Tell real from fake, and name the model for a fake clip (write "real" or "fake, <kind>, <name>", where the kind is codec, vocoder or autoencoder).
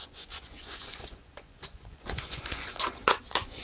fake, vocoder, Vocos